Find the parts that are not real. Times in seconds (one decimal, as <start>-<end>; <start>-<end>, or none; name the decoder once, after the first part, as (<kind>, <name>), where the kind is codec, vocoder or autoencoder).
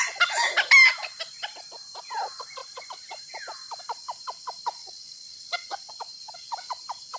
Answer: 4.8-5.9 (vocoder, WaveNeXt)